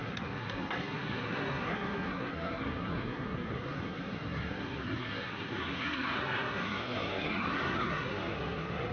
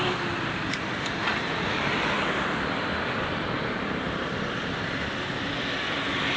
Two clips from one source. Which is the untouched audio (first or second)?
second